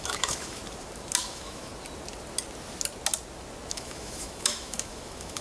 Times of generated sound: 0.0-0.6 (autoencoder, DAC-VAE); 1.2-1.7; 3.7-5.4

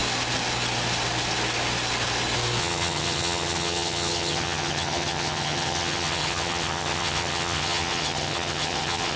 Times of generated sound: 2.6-9.2 (vocoder, HiFi-GAN)

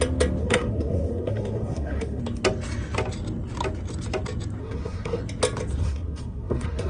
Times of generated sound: 0.4-2.2 (codec, SNAC); 4.6-5.2; 5.8-6.9